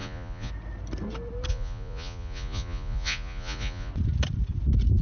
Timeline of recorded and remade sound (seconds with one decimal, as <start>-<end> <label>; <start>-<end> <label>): 0.0-0.5 remade; 0.5-1.5 recorded; 1.5-3.9 remade; 3.9-5.0 recorded